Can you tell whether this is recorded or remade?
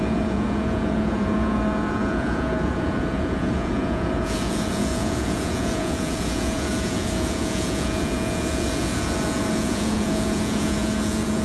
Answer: remade